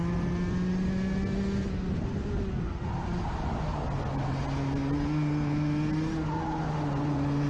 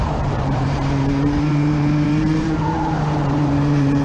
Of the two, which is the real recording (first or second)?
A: first